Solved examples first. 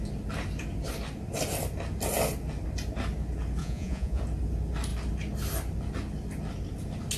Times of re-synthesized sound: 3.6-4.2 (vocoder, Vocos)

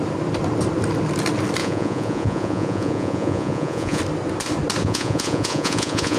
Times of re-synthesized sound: 1.6-4.0 (vocoder, Vocos); 4.8-6.2

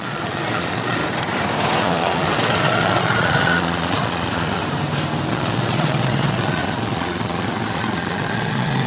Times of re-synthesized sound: 0.0-1.0 (vocoder, Vocos); 1.8-4.6; 5.3-8.9

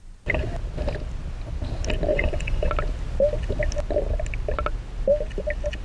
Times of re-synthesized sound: 2.1-2.7 (vocoder, Vocos)

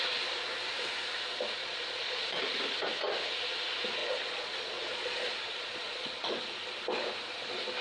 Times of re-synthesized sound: 1.6-2.4 (vocoder, Vocos); 4.0-6.4

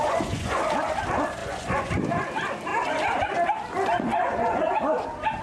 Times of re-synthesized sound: 0.0-0.6 (vocoder, Vocos); 1.4-1.9; 4.1-4.7

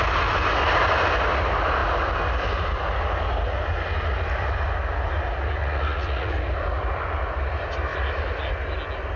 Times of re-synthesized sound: 5.6-6.3 (vocoder, Vocos)

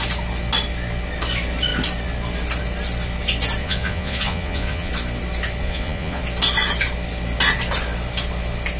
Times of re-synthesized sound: 3.6-4.9 (vocoder, Vocos); 5.6-6.2